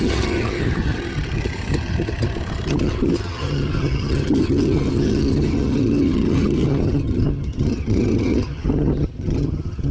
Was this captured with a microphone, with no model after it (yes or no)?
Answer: no